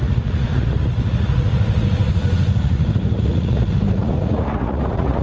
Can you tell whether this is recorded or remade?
remade